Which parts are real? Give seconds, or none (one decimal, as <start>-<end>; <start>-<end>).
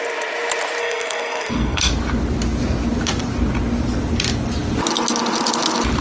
0.0-0.8; 1.9-6.0